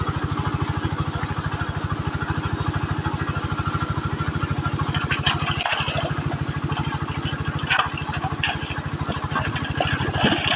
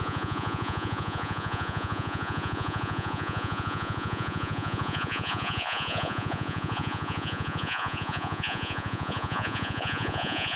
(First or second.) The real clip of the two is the first